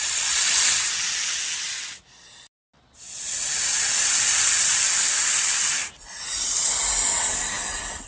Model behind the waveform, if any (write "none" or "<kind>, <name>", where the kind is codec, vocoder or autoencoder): none